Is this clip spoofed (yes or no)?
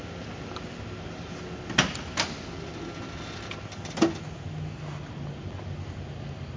no